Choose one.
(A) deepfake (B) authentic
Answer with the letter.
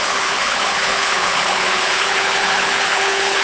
A